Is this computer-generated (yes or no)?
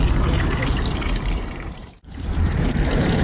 yes